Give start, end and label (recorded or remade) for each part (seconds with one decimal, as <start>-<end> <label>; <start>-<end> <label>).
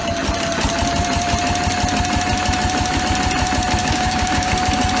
0.0-3.8 recorded; 3.8-4.5 remade; 4.5-5.0 recorded